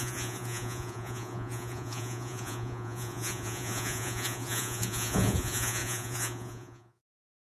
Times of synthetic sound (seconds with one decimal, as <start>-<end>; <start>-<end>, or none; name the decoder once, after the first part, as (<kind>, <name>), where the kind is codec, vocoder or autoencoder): 0.0-7.4 (vocoder, Vocos)